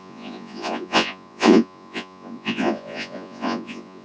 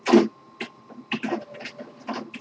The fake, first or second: first